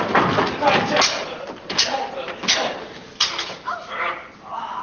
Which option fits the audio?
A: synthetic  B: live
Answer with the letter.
B